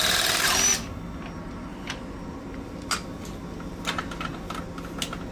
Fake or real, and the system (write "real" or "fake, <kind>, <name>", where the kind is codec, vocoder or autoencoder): real